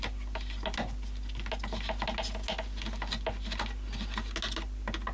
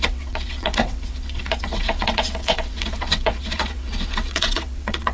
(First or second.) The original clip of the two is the first